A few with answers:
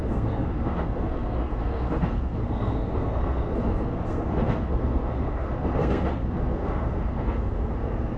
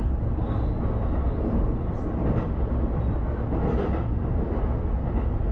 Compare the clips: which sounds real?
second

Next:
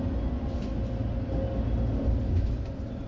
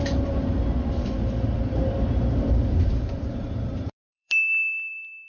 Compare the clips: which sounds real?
first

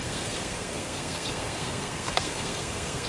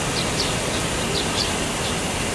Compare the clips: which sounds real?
second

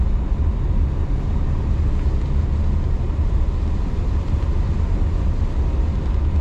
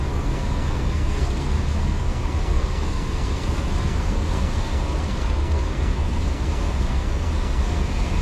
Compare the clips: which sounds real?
first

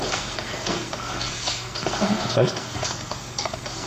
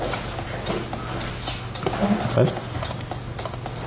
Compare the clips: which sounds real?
second